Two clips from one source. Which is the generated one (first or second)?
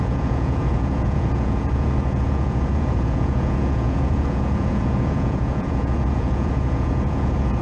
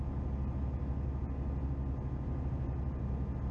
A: first